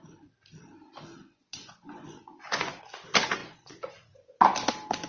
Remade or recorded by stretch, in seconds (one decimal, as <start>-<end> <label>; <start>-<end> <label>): 0.0-1.1 recorded; 1.1-2.8 remade; 2.8-3.4 recorded; 3.4-3.9 remade; 3.9-5.1 recorded